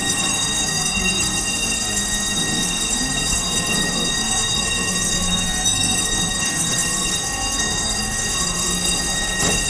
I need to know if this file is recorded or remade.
remade